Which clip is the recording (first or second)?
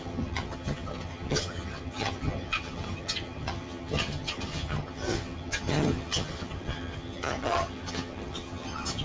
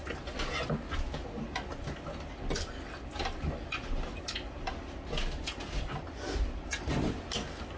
second